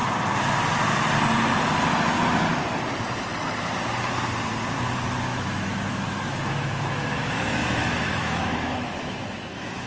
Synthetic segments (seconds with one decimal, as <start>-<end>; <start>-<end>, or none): 5.3-9.9